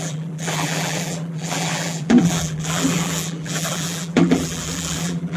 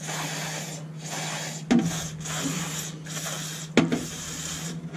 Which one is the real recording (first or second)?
second